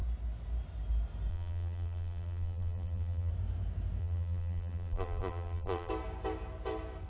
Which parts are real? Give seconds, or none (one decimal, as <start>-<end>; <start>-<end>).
0.0-1.3; 3.3-4.0; 5.9-7.1

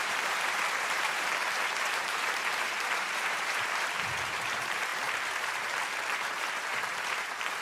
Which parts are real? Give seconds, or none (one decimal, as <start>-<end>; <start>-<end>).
none

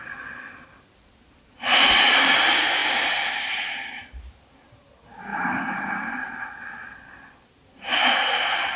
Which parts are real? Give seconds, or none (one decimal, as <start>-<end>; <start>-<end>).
0.0-8.8

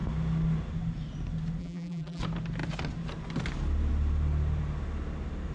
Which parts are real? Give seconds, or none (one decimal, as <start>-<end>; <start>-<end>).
0.0-1.6; 2.2-5.5